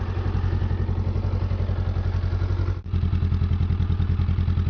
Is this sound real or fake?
real